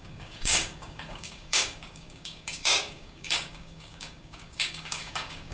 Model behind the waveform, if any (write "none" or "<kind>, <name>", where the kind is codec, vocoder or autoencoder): codec, DAC